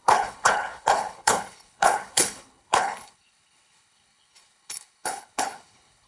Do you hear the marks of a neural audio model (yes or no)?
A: yes